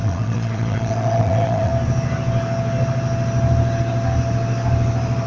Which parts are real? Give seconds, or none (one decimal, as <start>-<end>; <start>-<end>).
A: 1.7-5.3